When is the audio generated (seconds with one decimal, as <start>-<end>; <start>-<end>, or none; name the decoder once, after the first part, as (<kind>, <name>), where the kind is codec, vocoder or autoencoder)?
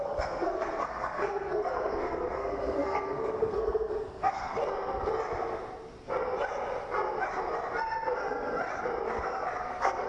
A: 0.0-4.6 (codec, SNAC); 9.6-10.1